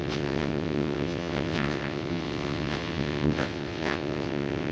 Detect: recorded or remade remade